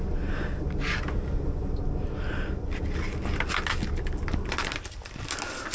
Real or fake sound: real